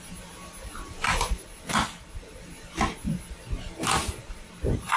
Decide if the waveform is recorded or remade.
recorded